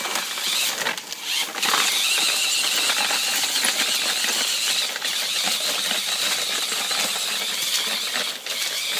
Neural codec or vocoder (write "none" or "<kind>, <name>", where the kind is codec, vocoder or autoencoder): none